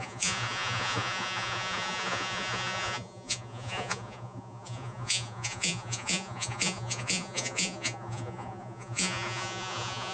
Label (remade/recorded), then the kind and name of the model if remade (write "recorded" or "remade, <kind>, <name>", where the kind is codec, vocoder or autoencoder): remade, vocoder, Vocos